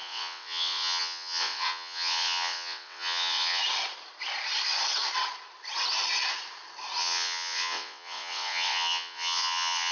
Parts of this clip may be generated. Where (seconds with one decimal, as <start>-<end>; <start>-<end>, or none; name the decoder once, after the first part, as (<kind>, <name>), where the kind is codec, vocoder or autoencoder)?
0.0-3.6 (vocoder, WaveNeXt); 7.0-9.9